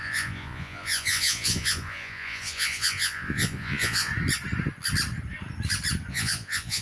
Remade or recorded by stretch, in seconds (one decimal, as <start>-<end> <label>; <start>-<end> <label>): 0.0-4.1 remade; 4.1-6.1 recorded; 6.1-6.8 remade